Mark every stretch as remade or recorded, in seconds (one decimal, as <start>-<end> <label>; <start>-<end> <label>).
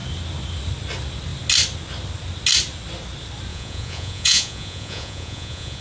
0.0-3.5 recorded; 3.5-5.8 remade